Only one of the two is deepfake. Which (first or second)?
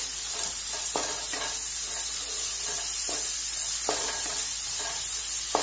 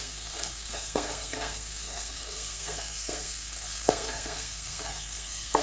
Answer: second